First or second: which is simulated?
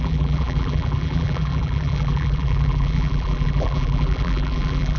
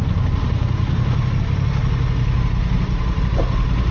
first